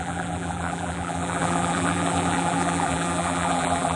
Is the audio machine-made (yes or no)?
yes